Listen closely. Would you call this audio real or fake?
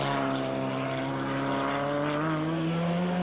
real